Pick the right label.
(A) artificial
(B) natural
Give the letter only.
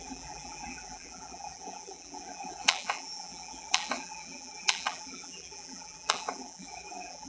A